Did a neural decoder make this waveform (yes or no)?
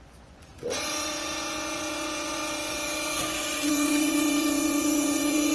yes